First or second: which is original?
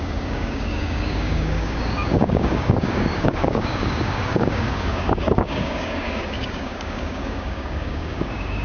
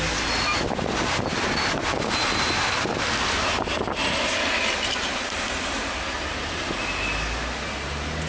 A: second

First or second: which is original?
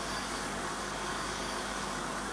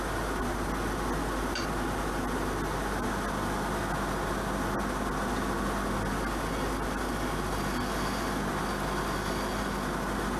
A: second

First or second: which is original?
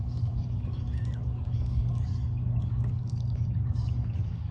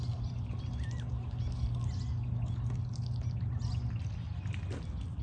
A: second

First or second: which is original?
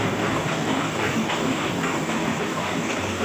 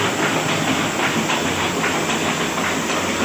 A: second